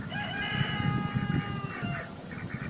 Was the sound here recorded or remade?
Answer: recorded